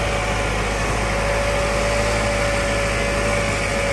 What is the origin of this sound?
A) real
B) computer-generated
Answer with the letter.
A